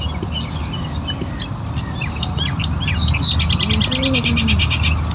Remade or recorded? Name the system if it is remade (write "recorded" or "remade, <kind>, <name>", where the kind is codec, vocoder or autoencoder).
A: recorded